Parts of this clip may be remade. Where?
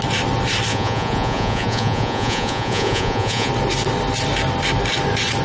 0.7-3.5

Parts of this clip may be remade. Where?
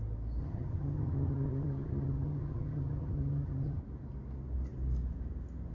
0.4-3.8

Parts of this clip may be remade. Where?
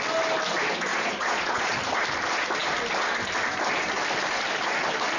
0.9-1.8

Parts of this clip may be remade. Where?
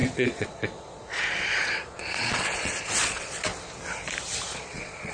0.0-3.5; 4.5-5.1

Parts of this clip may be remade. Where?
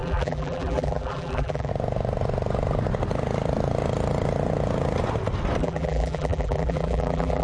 0.0-1.7; 5.6-7.4